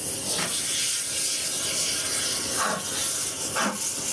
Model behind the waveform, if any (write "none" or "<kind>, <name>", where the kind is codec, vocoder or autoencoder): none